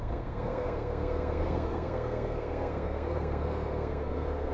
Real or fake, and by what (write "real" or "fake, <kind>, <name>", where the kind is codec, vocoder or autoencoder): fake, codec, SNAC